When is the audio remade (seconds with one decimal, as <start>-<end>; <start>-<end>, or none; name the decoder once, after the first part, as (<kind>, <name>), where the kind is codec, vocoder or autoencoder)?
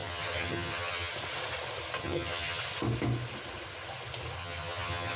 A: 0.0-1.1 (vocoder, HiFi-GAN); 2.0-2.6; 4.4-5.2